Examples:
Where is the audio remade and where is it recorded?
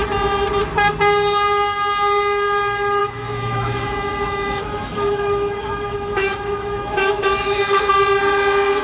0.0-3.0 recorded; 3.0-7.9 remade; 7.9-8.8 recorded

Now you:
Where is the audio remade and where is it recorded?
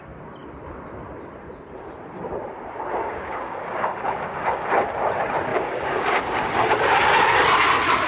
0.0-3.0 recorded; 3.0-4.7 remade; 4.7-5.5 recorded; 5.5-6.2 remade; 6.2-8.1 recorded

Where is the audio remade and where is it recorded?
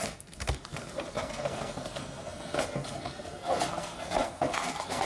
0.0-5.1 remade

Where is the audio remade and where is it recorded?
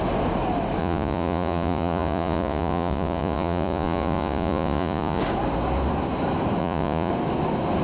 0.0-0.8 recorded; 0.8-5.2 remade; 5.2-6.6 recorded; 6.6-7.1 remade; 7.1-7.8 recorded